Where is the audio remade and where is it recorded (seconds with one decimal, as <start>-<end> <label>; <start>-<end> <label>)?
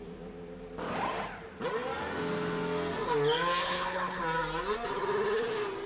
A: 0.0-3.6 recorded; 3.6-4.2 remade; 4.2-5.9 recorded